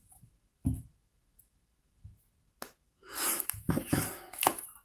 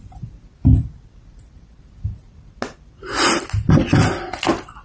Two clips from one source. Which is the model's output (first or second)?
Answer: first